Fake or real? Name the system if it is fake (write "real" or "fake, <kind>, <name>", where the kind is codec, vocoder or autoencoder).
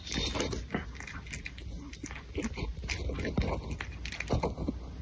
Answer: real